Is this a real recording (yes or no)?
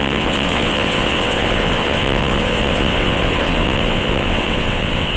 no